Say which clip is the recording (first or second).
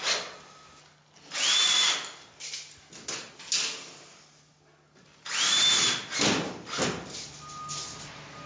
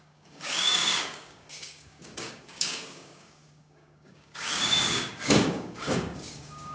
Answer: first